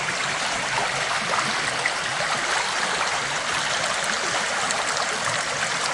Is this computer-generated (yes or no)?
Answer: no